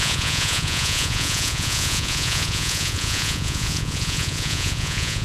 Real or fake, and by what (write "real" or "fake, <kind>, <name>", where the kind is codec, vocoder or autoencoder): fake, vocoder, Vocos